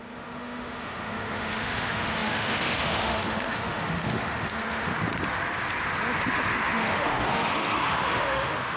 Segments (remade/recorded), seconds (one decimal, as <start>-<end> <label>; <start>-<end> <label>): 0.0-4.9 remade; 4.9-6.3 recorded; 6.3-8.8 remade